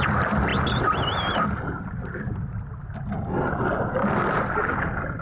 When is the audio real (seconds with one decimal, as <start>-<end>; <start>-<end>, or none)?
0.0-5.2